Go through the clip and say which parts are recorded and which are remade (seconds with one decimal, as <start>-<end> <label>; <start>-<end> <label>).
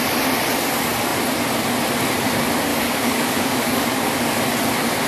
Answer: 0.0-2.7 recorded; 2.7-4.4 remade; 4.4-5.1 recorded